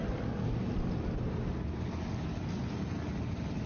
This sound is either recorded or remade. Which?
recorded